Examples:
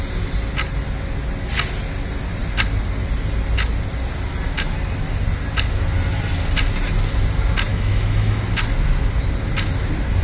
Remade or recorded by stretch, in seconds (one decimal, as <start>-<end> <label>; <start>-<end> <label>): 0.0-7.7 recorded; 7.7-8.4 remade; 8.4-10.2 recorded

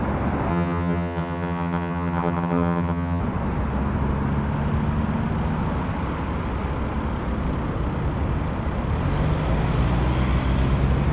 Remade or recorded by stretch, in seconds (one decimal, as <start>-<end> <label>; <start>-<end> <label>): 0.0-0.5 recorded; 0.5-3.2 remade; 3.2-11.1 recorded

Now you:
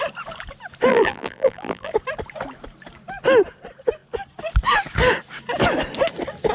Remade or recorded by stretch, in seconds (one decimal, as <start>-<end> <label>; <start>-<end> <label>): 0.0-0.9 recorded; 0.9-1.9 remade; 1.9-6.5 recorded